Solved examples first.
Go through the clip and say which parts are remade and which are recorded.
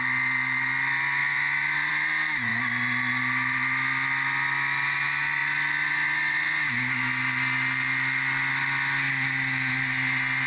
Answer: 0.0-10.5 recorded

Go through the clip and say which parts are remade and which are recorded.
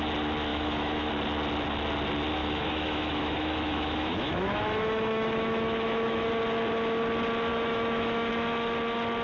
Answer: 0.0-0.5 recorded; 0.5-1.1 remade; 1.1-2.4 recorded; 2.4-6.3 remade; 6.3-7.5 recorded; 7.5-8.3 remade; 8.3-9.2 recorded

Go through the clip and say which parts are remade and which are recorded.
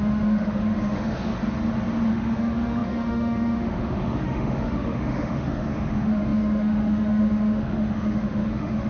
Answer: 0.0-1.4 remade; 1.4-2.1 recorded; 2.1-8.9 remade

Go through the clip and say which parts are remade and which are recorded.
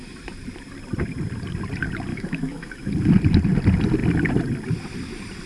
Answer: 0.0-2.1 recorded; 2.1-2.9 remade; 2.9-5.5 recorded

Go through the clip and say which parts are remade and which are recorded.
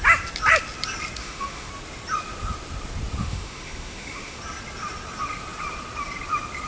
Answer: 0.0-1.2 recorded; 1.2-1.7 remade; 1.7-3.2 recorded; 3.2-4.4 remade; 4.4-6.7 recorded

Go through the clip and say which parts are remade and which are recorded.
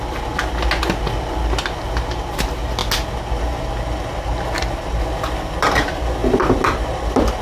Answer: 0.0-7.4 recorded